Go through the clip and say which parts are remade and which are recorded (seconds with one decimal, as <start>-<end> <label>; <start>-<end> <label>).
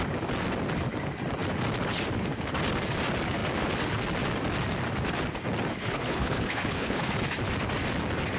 0.0-5.7 recorded; 5.7-7.1 remade; 7.1-8.4 recorded